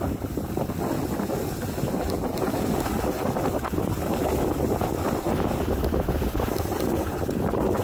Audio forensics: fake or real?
real